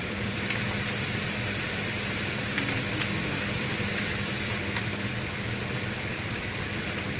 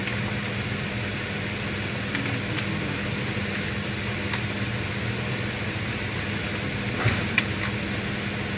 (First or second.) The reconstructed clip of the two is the first